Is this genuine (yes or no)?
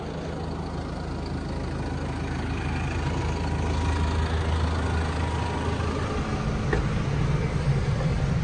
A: yes